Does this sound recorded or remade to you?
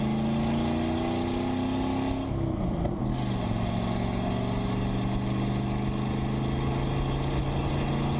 recorded